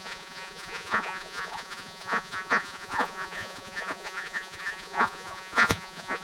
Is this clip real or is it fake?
fake